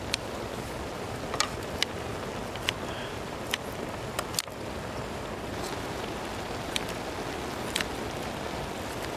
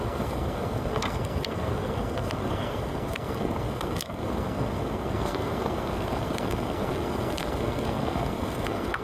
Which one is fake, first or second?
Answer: second